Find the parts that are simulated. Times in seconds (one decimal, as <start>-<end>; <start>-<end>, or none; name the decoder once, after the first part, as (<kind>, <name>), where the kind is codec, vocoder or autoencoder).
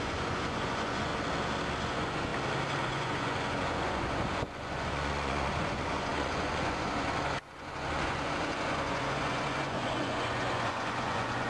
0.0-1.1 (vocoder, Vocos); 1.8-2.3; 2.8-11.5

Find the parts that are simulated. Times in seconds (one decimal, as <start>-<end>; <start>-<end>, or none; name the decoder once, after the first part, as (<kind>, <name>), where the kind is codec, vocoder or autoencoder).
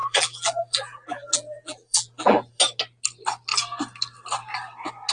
0.0-2.6 (vocoder, BigVGAN v2)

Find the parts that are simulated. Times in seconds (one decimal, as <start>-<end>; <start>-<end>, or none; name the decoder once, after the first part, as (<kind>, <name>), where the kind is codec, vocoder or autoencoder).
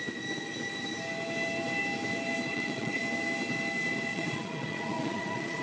2.5-3.0 (vocoder, Vocos); 4.1-5.6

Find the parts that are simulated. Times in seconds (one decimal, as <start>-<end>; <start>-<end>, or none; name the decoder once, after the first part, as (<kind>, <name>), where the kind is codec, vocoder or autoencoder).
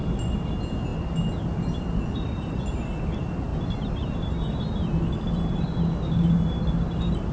none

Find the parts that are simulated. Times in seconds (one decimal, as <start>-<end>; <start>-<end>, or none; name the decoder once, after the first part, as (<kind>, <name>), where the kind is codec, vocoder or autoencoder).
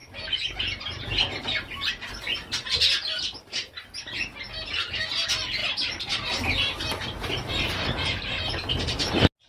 0.0-1.9 (vocoder, BigVGAN v2); 5.6-8.7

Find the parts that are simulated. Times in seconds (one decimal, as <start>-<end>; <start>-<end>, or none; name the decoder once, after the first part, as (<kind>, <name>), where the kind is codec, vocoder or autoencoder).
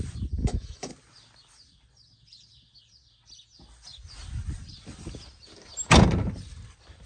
0.4-0.9 (autoencoder, DAC-VAE)